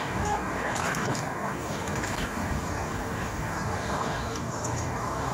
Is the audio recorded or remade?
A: remade